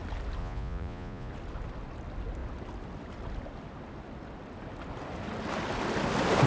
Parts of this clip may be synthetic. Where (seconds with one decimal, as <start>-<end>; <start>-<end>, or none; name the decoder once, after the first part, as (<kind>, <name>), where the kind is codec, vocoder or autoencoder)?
0.4-1.3 (vocoder, Vocos)